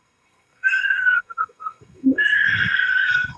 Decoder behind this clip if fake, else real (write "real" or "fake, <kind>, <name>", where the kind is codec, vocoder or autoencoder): fake, codec, SNAC